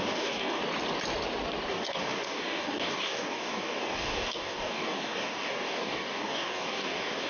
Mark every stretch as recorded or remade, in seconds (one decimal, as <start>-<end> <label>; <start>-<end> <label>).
0.0-0.6 remade; 0.6-1.7 recorded; 1.7-7.3 remade